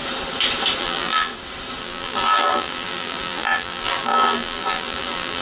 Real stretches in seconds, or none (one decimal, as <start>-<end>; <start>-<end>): 0.0-0.8; 1.3-1.8